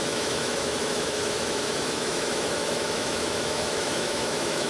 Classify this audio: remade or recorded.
remade